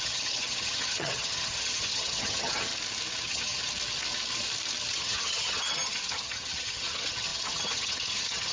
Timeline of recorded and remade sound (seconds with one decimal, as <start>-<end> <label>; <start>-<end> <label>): 0.0-2.7 remade; 2.7-3.2 recorded; 3.2-3.6 remade; 3.6-4.9 recorded; 4.9-8.5 remade